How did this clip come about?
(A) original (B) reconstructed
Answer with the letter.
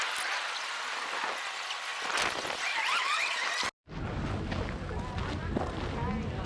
A